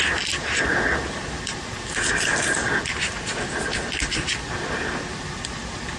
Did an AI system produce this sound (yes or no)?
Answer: no